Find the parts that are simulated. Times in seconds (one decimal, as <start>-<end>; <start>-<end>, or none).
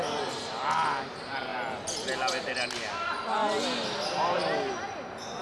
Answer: none